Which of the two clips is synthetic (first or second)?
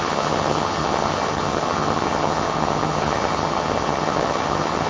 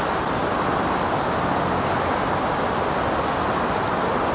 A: first